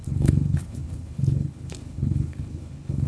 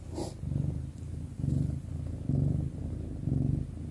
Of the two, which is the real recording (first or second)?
second